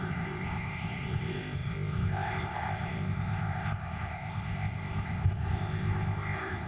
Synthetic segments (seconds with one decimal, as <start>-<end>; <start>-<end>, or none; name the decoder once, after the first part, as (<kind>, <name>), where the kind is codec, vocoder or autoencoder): 0.0-6.7 (codec, ZipCodec)